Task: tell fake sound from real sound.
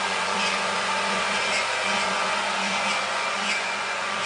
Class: fake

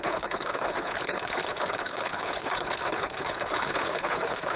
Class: fake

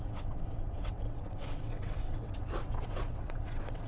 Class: fake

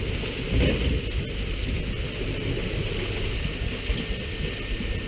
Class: real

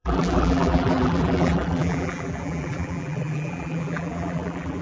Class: fake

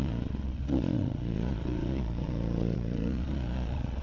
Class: fake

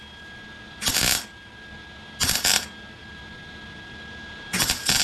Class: real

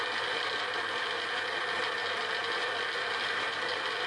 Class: real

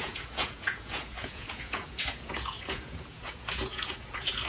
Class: fake